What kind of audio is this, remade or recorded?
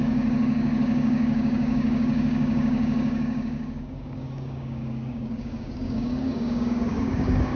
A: remade